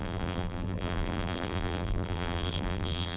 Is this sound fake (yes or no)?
yes